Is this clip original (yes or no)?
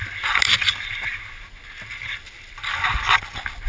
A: yes